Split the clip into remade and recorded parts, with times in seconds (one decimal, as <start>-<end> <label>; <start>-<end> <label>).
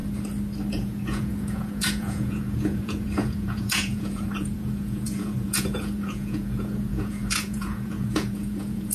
0.0-0.7 recorded; 0.7-8.9 remade